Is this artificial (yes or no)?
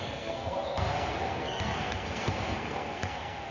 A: yes